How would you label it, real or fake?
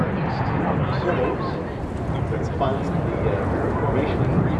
real